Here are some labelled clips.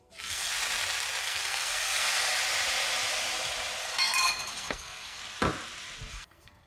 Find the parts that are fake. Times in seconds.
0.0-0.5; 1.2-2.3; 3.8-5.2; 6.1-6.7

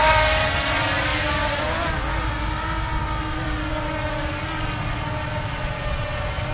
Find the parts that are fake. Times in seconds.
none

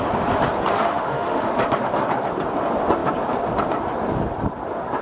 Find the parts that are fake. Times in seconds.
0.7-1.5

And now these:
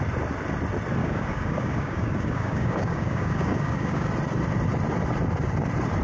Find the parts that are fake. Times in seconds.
1.0-4.1